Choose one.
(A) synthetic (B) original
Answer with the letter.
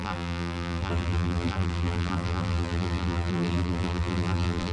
A